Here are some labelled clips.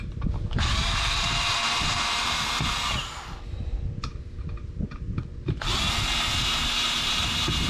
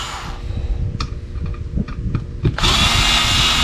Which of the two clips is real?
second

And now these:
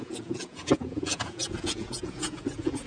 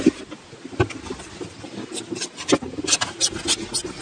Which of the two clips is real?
second